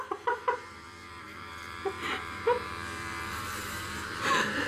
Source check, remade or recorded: remade